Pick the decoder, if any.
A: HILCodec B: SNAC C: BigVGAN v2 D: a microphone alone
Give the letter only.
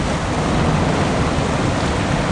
D